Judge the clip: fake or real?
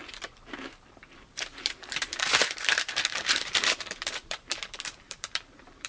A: fake